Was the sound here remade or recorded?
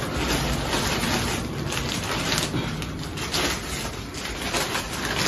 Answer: recorded